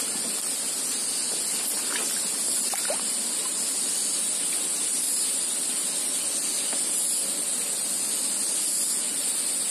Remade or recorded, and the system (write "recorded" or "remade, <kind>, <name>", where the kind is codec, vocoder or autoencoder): recorded